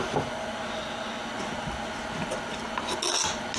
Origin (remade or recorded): recorded